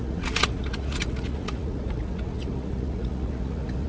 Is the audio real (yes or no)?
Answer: no